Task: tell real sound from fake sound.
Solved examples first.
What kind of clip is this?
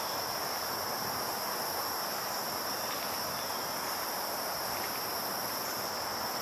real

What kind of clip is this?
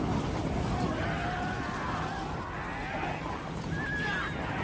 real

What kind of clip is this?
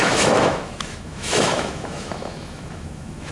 fake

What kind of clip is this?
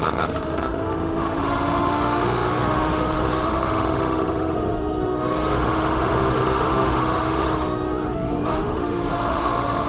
fake